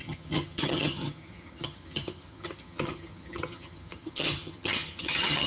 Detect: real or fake fake